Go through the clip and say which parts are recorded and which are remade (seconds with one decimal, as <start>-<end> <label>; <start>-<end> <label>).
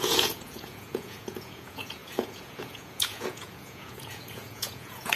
0.0-5.2 remade